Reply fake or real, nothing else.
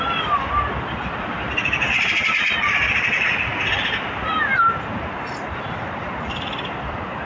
fake